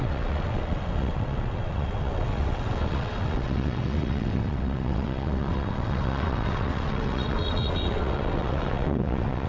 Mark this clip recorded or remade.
remade